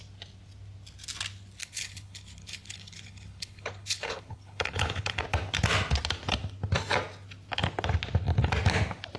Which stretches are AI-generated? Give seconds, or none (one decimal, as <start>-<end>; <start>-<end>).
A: 1.6-5.2